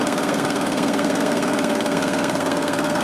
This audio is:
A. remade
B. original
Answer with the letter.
A